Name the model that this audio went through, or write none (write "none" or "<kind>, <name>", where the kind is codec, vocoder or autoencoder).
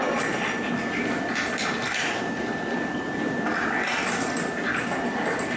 none